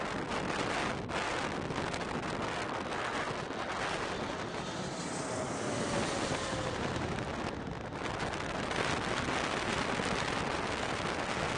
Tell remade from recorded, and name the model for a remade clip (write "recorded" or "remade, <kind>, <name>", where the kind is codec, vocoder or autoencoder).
recorded